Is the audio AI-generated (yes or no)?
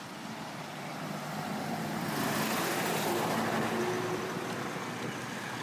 yes